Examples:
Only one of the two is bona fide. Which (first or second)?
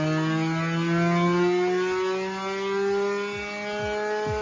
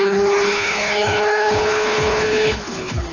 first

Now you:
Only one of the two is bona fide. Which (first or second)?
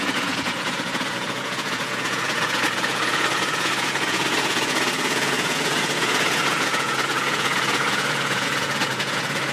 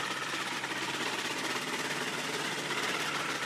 second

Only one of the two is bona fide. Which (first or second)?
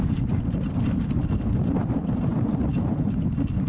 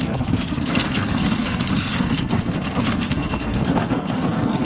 first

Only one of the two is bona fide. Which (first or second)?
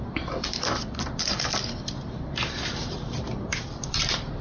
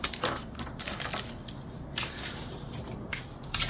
second